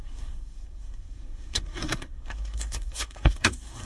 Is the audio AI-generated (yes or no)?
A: yes